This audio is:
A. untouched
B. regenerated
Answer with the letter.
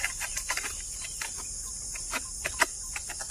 A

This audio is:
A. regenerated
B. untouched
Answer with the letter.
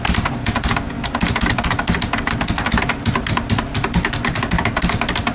B